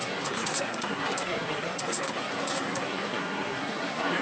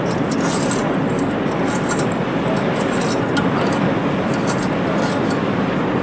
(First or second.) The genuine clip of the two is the second